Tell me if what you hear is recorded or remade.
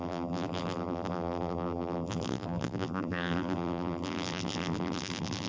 remade